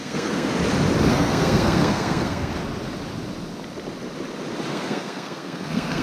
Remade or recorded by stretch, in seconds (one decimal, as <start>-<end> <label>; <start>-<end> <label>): 0.0-0.5 remade; 0.5-1.1 recorded; 1.1-2.5 remade; 2.5-4.7 recorded; 4.7-6.0 remade